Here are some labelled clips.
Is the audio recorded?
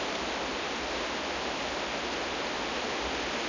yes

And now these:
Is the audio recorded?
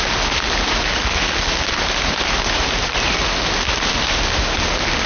yes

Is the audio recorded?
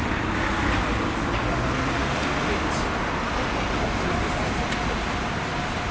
yes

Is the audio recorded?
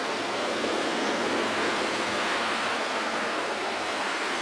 no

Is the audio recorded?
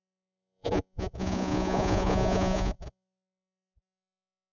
no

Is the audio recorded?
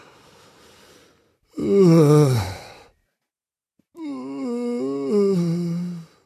yes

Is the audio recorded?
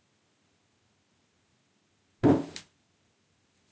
yes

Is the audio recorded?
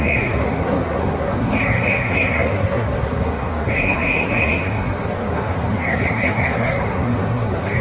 no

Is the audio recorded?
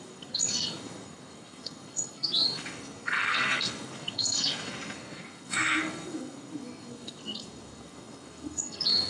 no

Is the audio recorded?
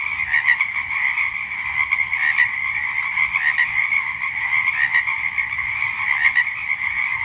yes